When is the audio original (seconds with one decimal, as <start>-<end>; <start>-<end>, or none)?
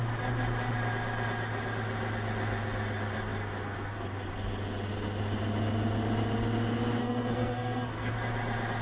0.0-7.0; 8.1-8.8